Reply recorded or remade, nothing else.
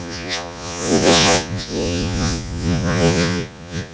remade